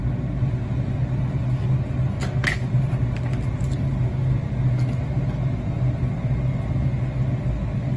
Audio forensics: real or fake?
real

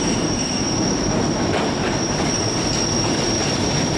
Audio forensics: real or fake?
fake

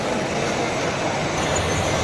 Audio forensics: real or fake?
real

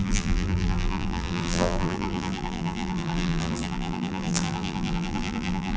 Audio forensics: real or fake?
fake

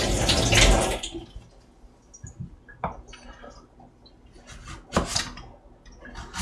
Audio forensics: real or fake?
real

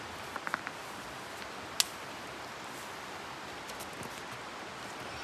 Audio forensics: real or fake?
real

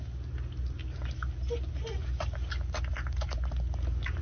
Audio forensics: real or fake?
real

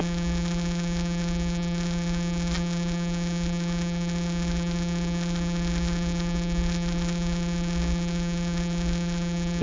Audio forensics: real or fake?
fake